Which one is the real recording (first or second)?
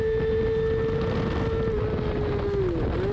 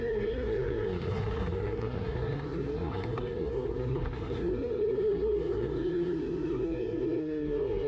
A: first